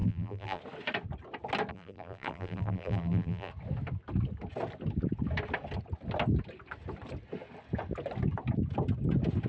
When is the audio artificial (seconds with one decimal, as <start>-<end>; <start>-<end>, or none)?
0.0-0.6; 1.7-3.5